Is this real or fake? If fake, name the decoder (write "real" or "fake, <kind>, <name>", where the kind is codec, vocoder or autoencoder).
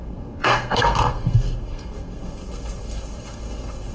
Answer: fake, codec, SNAC